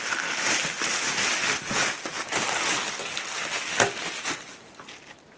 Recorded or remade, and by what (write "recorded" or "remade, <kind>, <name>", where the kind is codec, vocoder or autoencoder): recorded